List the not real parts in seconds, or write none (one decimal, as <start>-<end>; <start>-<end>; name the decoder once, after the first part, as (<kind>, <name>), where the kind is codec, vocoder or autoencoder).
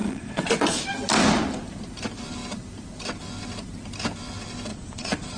0.0-0.8 (vocoder, Vocos); 4.7-5.4